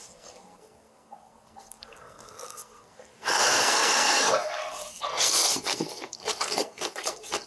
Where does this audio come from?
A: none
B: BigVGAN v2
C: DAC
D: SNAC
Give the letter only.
D